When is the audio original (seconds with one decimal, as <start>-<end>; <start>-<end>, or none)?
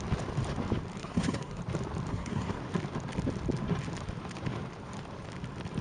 0.0-1.0; 1.6-2.1; 2.6-5.8